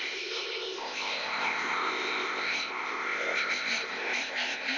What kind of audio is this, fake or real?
fake